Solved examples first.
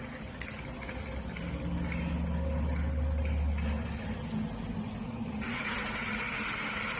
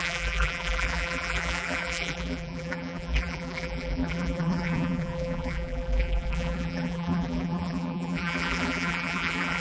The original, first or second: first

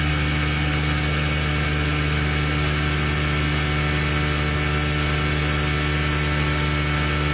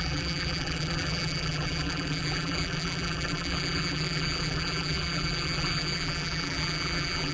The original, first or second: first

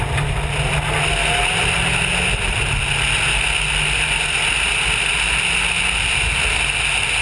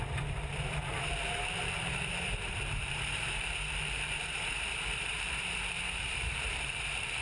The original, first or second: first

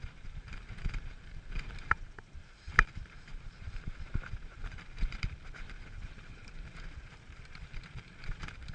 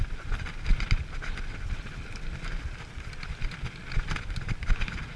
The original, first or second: second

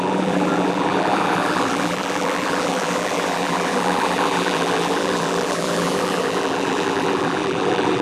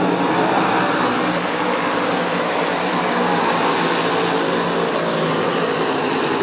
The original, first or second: second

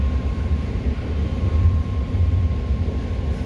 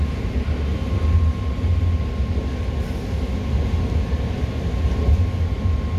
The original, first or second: second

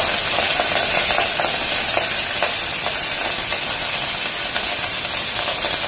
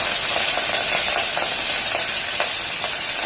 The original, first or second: first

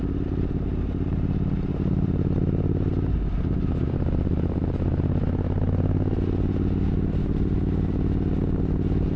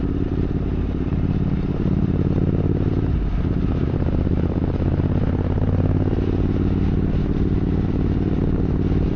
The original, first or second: first